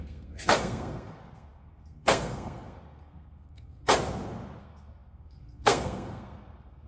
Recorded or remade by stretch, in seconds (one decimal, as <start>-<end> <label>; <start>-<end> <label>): 0.0-3.8 remade; 3.8-4.6 recorded; 4.6-6.9 remade